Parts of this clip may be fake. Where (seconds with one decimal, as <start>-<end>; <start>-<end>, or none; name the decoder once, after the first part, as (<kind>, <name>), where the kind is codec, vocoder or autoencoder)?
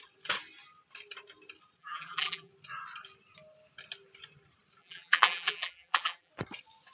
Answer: 1.8-2.5 (vocoder, BigVGAN v2); 4.8-6.3